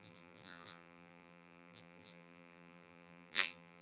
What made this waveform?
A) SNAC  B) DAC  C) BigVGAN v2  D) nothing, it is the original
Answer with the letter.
C